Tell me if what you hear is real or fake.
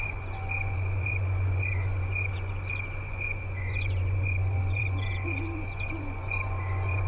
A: fake